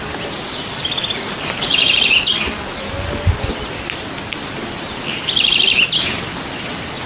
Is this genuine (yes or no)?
yes